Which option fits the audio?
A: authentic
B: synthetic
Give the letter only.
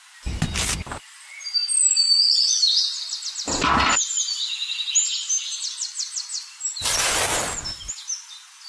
A